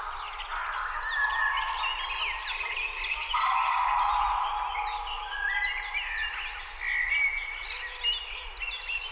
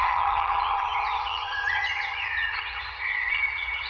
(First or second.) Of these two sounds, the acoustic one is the first